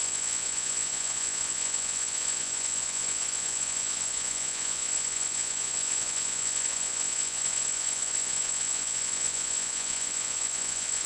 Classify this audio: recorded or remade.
remade